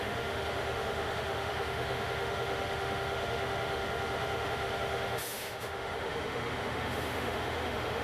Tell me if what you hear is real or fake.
fake